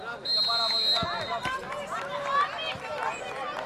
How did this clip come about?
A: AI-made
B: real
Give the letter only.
B